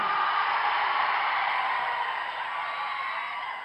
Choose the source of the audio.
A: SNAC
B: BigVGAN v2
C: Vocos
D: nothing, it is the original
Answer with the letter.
B